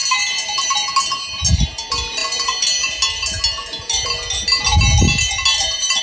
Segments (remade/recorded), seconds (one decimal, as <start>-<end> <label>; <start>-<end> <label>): 0.0-6.0 recorded